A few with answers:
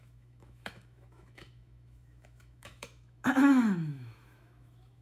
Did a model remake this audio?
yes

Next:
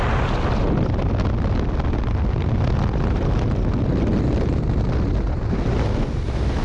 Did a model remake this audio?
no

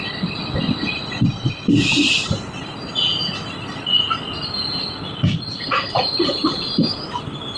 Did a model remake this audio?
no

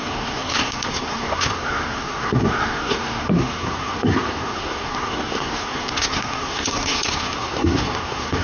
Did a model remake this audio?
yes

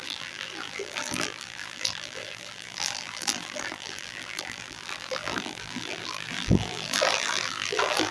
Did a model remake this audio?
yes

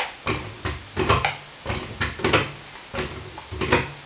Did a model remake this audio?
no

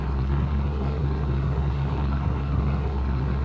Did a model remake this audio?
yes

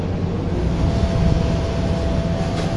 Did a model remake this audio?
no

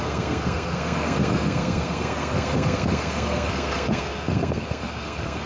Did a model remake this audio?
yes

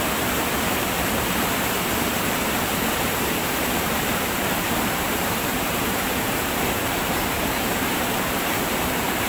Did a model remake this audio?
yes